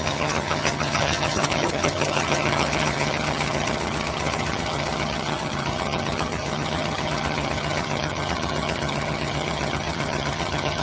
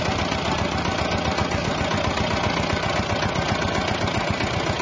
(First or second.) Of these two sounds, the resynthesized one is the first